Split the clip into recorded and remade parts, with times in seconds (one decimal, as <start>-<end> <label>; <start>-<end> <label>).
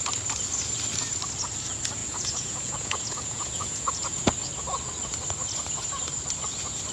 0.0-2.0 recorded; 2.0-4.3 remade; 4.3-6.9 recorded